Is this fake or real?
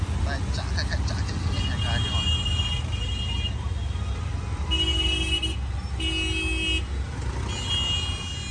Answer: real